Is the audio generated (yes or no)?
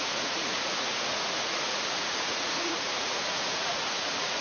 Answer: yes